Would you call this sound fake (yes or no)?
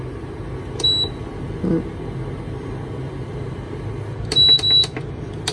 no